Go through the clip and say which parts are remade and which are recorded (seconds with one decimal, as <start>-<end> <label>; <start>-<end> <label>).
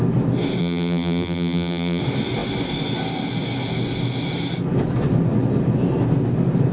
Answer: 0.0-0.6 recorded; 0.6-2.0 remade; 2.0-6.7 recorded